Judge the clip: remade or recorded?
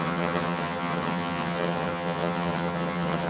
remade